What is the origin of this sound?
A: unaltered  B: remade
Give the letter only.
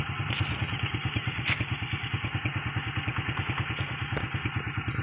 A